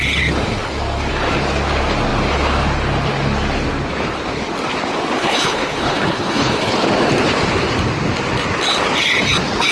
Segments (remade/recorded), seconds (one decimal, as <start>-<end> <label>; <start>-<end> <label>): 0.0-5.2 recorded; 5.2-6.7 remade; 6.7-9.7 recorded